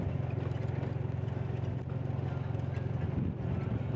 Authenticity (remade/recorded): recorded